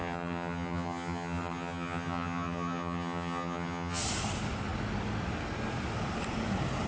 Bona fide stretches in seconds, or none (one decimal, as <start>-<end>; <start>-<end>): 4.0-6.9